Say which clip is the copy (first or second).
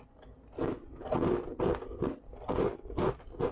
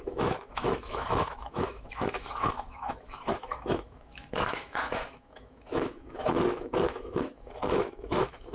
second